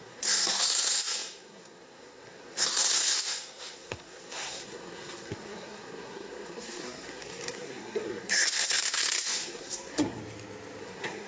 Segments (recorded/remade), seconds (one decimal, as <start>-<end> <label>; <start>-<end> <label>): 0.0-10.2 remade; 10.2-10.8 recorded; 10.8-11.3 remade